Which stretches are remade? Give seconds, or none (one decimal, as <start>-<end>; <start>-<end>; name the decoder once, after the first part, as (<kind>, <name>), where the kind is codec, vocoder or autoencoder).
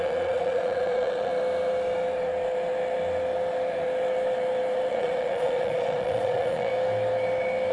0.0-1.3 (vocoder, Vocos); 4.9-6.7